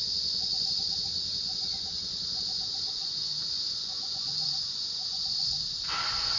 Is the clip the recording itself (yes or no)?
no